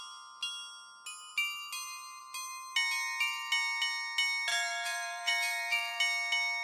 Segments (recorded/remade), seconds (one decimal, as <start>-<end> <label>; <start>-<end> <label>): 0.0-4.5 recorded; 4.5-6.0 remade; 6.0-6.6 recorded